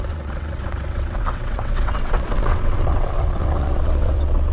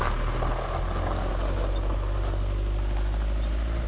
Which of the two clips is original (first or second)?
second